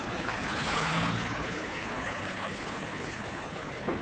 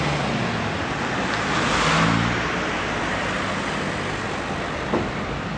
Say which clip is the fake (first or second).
first